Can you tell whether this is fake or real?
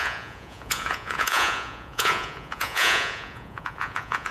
fake